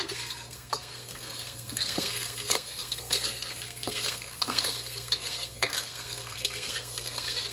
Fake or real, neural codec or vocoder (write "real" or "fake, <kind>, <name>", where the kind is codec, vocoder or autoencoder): fake, codec, SNAC